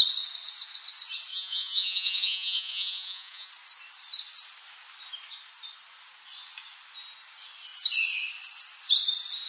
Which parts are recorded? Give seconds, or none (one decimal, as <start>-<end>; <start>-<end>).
0.0-1.3; 3.5-9.5